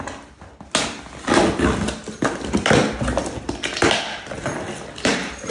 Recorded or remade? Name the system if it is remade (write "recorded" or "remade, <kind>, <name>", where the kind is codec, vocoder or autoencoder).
recorded